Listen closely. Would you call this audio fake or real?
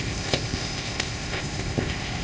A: fake